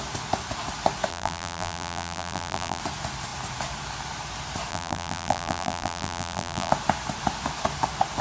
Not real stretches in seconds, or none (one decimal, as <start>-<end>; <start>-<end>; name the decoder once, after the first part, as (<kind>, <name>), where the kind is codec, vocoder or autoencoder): 1.1-2.8 (vocoder, BigVGAN v2); 4.7-6.7